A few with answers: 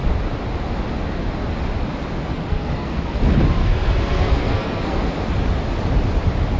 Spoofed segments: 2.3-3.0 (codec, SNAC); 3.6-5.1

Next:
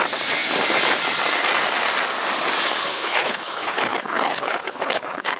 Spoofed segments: 2.8-5.4 (codec, HILCodec)

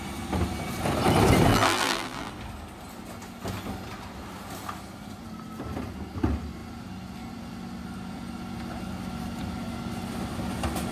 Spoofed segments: 1.5-2.3 (vocoder, BigVGAN v2)